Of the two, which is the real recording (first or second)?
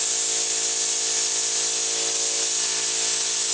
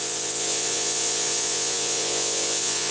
first